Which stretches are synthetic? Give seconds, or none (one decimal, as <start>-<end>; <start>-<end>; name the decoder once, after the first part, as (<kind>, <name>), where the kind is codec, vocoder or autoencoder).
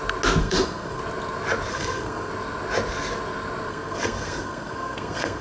0.4-1.0 (codec, SNAC); 1.7-2.3; 3.7-5.4